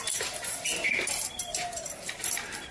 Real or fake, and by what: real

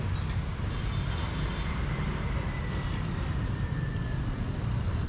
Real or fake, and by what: real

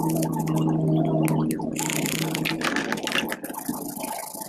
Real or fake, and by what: real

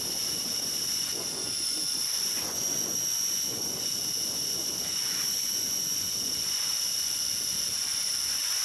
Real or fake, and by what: fake, vocoder, Vocos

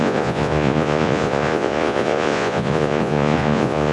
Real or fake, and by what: fake, vocoder, Vocos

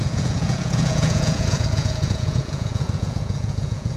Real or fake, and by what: fake, vocoder, Vocos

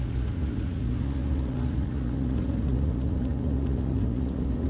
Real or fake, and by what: fake, vocoder, Vocos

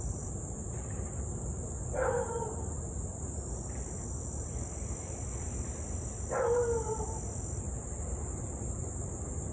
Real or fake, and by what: real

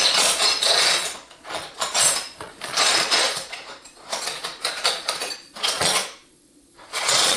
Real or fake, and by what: fake, vocoder, Vocos